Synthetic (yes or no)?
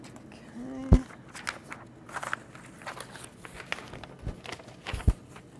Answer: no